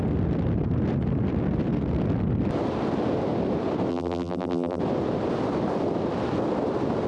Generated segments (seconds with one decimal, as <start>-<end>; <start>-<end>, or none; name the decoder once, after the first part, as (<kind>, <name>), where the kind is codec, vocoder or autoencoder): 3.9-4.8 (vocoder, BigVGAN v2)